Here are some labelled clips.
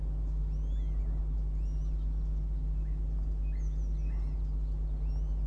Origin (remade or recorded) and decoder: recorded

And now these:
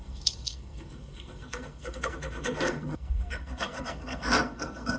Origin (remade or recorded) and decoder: remade, codec, SNAC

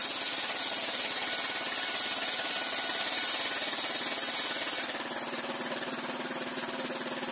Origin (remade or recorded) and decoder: recorded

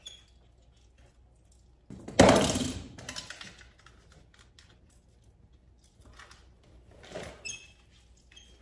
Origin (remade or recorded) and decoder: recorded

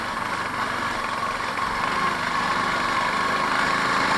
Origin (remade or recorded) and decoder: recorded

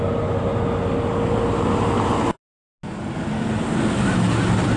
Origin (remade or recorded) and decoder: recorded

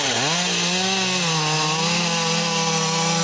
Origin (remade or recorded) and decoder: recorded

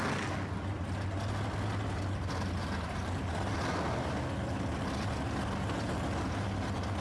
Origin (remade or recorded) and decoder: recorded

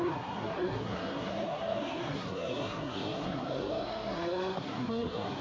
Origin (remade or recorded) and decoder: remade, codec, SNAC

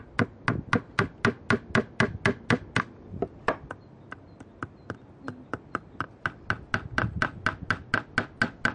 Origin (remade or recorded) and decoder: recorded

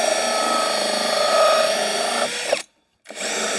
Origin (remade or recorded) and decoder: recorded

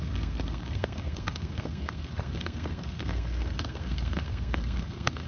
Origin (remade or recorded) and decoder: remade, codec, SNAC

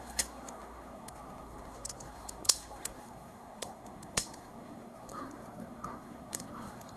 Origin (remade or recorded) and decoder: remade, codec, SNAC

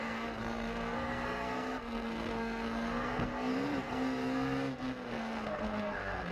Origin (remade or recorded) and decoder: remade, codec, SNAC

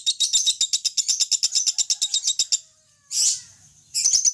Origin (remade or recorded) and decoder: recorded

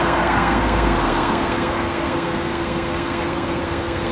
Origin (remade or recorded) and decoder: remade, codec, SNAC